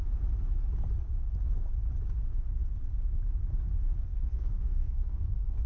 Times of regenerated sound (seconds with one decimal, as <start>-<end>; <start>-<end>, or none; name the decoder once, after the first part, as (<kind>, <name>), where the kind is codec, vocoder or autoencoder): 4.1-5.7 (codec, SNAC)